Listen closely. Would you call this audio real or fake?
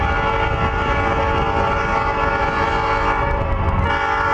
real